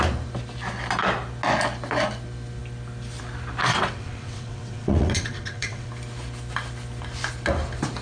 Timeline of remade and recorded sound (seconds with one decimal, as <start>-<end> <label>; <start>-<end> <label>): 0.0-3.7 recorded; 3.7-5.9 remade; 5.9-8.0 recorded